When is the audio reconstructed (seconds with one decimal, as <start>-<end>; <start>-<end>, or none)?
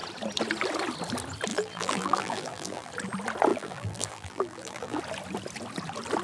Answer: 1.5-2.9; 3.5-5.0